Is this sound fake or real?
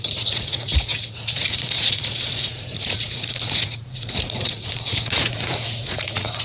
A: fake